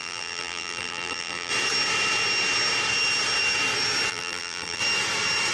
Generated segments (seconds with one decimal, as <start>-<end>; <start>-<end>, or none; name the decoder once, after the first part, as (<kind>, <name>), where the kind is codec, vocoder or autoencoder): 0.0-1.5 (vocoder, BigVGAN v2); 4.1-4.8